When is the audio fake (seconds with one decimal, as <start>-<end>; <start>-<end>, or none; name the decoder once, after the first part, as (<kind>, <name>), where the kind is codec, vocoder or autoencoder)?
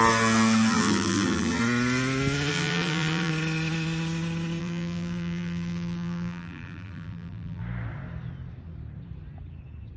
0.7-1.6 (vocoder, BigVGAN v2); 2.5-3.3; 4.6-7.6